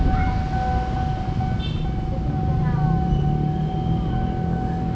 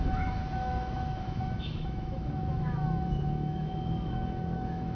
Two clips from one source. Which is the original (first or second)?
first